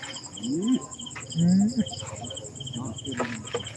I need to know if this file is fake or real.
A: real